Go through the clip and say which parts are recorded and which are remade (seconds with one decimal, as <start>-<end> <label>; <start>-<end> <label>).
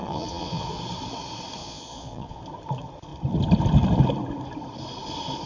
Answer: 0.0-0.8 remade; 0.8-1.6 recorded; 1.6-2.4 remade; 2.4-5.5 recorded